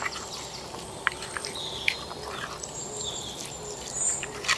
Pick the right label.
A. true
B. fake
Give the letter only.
A